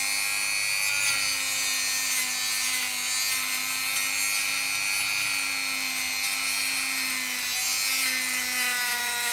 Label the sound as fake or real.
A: real